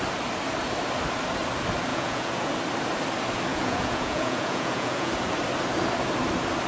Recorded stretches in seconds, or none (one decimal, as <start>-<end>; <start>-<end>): 0.0-1.9; 2.5-3.5; 5.1-6.7